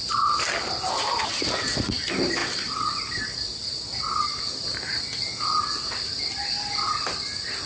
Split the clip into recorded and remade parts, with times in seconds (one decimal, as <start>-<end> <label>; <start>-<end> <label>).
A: 0.0-7.7 recorded